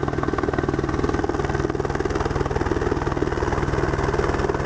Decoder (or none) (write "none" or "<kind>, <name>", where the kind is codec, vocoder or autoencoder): none